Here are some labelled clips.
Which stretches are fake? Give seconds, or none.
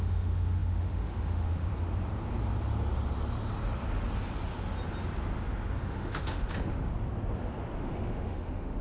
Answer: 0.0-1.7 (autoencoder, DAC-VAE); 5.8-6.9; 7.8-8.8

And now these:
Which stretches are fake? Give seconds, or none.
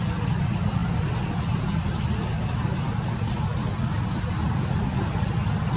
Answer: 0.0-0.8 (vocoder, BigVGAN v2); 4.3-5.8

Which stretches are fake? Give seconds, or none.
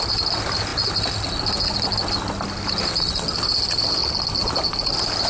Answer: none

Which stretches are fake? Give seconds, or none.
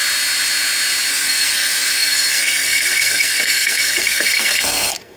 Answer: 1.1-5.2 (codec, SNAC)